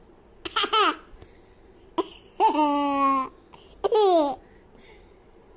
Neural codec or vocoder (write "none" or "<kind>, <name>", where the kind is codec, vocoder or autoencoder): none